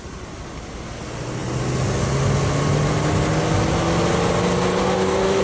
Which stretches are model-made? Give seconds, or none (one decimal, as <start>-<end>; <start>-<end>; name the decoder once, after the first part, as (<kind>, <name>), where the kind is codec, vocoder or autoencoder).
4.8-5.4 (codec, DAC)